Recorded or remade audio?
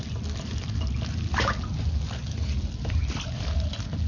recorded